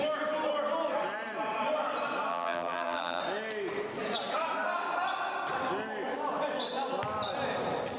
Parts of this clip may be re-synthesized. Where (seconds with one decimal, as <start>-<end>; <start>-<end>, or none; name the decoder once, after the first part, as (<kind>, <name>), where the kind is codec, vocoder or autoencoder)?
2.3-3.2 (vocoder, BigVGAN v2)